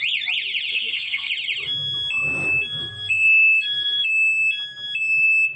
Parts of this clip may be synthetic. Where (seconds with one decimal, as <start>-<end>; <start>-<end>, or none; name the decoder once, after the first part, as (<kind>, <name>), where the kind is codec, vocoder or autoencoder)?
0.7-1.3 (codec, SNAC); 2.8-4.1